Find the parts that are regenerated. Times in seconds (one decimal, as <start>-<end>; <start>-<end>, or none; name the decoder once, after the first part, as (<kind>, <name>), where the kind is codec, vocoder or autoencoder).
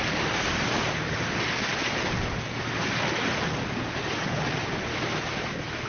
4.9-5.9 (autoencoder, DAC-VAE)